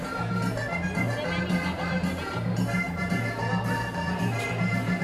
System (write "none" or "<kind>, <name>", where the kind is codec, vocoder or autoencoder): none